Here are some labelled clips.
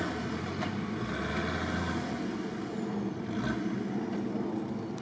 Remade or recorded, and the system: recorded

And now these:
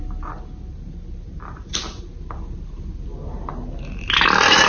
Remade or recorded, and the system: recorded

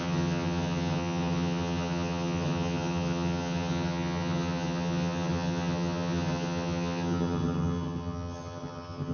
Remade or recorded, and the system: remade, vocoder, HiFi-GAN